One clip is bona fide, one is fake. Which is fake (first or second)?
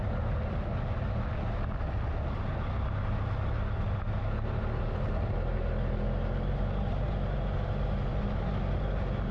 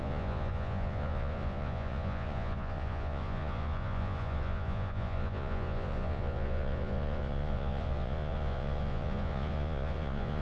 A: second